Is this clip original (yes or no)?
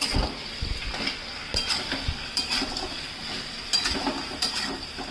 yes